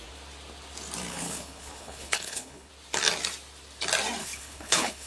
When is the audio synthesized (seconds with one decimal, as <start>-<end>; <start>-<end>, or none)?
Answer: 1.1-2.7; 4.2-5.1